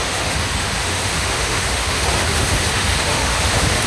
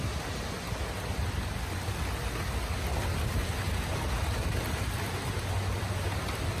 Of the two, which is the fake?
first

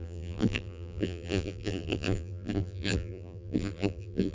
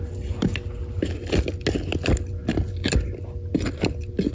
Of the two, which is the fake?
first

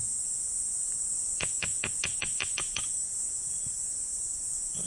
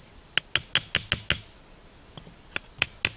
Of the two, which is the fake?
first